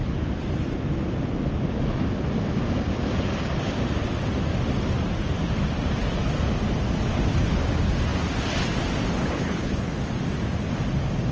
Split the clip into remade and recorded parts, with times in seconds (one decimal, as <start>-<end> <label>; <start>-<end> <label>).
0.0-9.2 recorded; 9.2-9.9 remade; 9.9-11.3 recorded